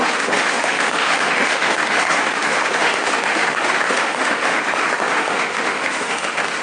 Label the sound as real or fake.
fake